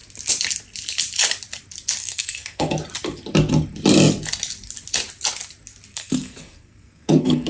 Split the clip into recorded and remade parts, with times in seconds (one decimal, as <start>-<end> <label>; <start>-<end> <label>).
0.0-2.0 recorded; 2.0-2.7 remade; 2.7-5.9 recorded; 5.9-7.5 remade